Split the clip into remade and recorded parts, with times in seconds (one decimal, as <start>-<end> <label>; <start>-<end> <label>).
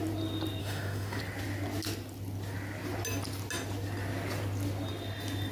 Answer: 0.0-0.6 recorded; 0.6-1.2 remade; 1.2-5.5 recorded